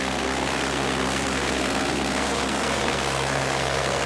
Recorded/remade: remade